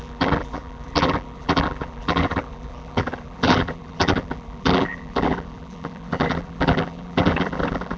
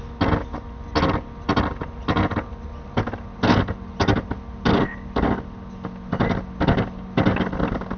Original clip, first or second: second